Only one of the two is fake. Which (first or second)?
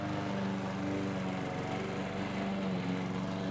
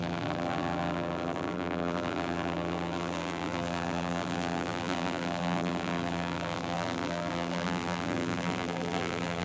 second